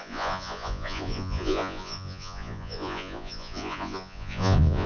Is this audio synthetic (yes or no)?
yes